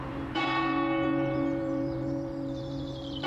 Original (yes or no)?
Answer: no